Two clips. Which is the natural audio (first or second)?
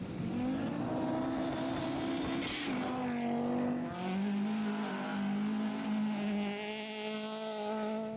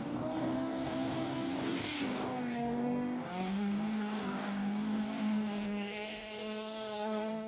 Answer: first